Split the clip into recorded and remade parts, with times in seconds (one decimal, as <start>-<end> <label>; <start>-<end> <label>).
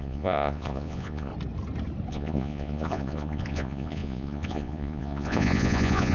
0.0-1.3 remade; 1.3-2.1 recorded; 2.1-6.1 remade